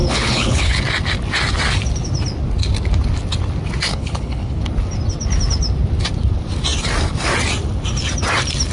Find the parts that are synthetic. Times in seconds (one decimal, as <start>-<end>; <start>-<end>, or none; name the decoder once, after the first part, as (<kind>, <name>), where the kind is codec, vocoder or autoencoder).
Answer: 0.0-0.8 (codec, HILCodec); 3.9-4.6